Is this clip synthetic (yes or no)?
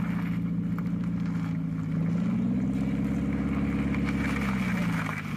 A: no